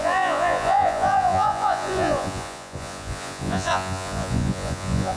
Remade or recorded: remade